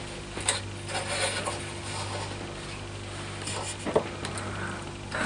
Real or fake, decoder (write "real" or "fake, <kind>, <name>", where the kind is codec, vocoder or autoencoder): real